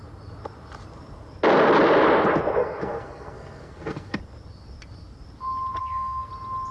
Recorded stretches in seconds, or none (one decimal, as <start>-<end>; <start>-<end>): 0.0-2.6; 4.2-5.8; 6.3-6.7